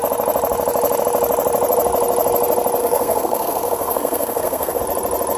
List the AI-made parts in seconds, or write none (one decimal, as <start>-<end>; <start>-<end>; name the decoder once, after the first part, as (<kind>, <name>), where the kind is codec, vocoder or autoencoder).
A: 2.8-4.8 (codec, SNAC)